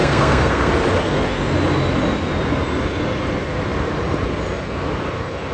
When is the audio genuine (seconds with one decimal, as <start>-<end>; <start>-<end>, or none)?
0.7-5.5